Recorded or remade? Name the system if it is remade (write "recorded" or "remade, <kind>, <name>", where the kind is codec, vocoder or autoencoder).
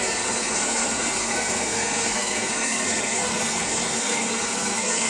remade, codec, SNAC